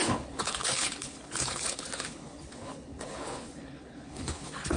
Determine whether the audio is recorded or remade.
remade